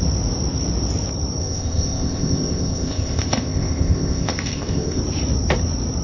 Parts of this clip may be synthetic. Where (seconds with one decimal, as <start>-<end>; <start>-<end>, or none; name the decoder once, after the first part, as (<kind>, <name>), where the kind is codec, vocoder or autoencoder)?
1.4-5.0 (codec, ZipCodec)